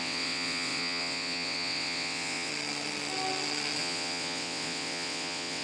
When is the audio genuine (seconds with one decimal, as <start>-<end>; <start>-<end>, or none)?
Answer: 2.5-3.8